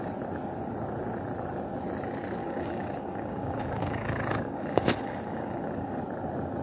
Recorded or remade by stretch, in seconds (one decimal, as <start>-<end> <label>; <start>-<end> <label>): 0.0-2.4 recorded; 2.4-6.0 remade; 6.0-6.6 recorded